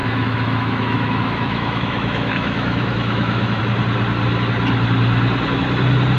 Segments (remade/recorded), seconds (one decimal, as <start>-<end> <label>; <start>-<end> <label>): 0.0-3.6 remade; 3.6-6.2 recorded